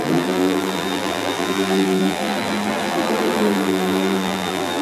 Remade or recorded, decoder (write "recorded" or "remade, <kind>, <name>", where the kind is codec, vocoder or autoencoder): remade, vocoder, BigVGAN v2